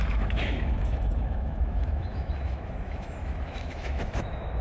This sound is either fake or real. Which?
fake